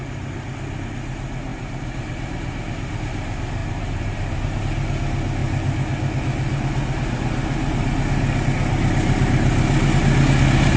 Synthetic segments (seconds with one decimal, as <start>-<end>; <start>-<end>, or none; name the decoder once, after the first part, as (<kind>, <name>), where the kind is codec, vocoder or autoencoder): 1.5-2.7 (vocoder, BigVGAN v2); 3.6-4.6